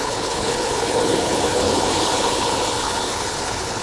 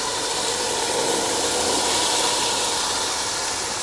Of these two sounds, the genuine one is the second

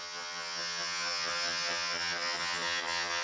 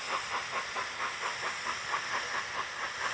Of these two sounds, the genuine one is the second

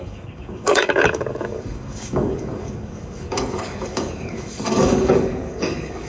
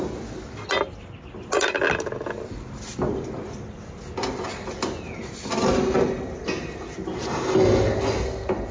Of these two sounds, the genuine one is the second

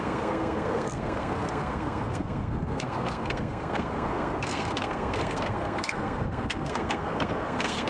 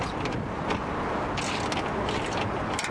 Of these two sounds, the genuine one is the second